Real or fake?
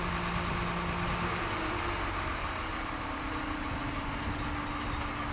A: real